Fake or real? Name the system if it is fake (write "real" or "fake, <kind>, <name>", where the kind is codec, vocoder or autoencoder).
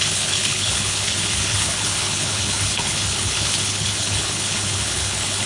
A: fake, codec, HILCodec